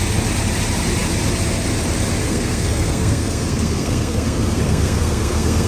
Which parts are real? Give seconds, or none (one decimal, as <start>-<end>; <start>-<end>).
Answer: 0.0-2.2